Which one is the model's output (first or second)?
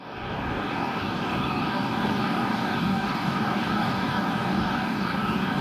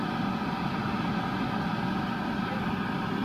first